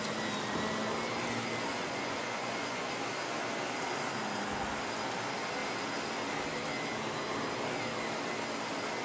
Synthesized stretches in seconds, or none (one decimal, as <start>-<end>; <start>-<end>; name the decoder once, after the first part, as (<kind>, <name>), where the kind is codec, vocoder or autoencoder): 1.7-2.9 (vocoder, Vocos)